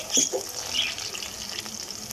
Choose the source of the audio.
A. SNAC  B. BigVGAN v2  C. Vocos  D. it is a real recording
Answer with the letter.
D